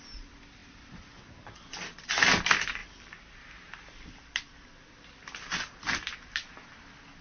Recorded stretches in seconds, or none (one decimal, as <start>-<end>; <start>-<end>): 0.6-1.2